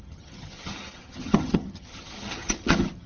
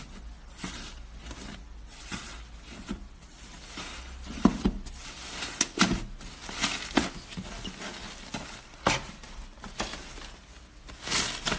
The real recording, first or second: second